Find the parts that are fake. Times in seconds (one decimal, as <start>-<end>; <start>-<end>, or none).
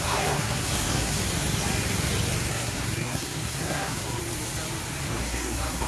0.0-1.2; 2.5-4.2; 5.0-5.9